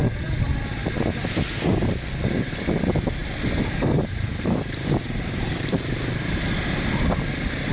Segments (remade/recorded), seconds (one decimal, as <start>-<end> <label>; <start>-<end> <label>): 0.0-0.5 remade; 0.5-3.2 recorded; 3.2-6.9 remade; 6.9-7.7 recorded